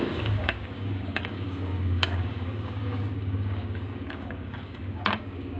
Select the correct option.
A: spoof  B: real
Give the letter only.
A